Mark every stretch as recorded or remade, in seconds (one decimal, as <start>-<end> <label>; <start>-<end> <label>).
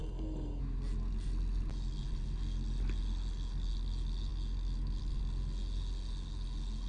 0.0-0.6 remade; 0.6-6.9 recorded